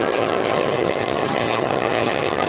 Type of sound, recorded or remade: remade